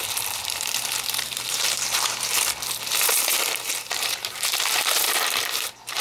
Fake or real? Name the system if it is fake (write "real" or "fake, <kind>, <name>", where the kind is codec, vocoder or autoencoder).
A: fake, vocoder, BigVGAN v2